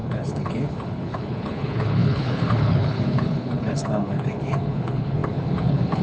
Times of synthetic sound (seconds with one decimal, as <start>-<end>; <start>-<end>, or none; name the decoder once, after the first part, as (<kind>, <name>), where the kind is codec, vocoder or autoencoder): 0.0-6.0 (codec, HILCodec)